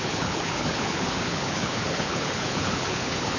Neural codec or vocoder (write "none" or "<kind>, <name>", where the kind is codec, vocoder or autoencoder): codec, HILCodec